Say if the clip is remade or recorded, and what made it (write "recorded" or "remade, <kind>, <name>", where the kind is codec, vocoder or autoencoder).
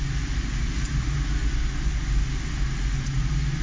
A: recorded